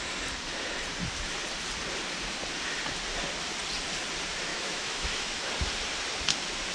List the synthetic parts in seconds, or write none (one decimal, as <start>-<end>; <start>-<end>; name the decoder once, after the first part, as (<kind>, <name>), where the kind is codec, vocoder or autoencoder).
4.5-5.5 (autoencoder, DAC-VAE)